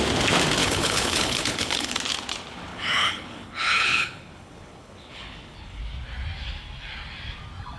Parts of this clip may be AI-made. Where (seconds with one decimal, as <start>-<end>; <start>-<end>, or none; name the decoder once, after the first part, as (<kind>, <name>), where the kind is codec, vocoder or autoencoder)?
0.6-2.0 (codec, HILCodec); 2.7-5.8